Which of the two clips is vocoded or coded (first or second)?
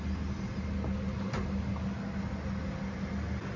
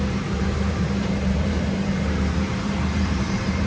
second